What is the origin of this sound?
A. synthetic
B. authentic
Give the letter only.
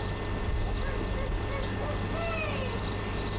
B